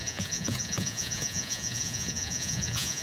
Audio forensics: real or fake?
fake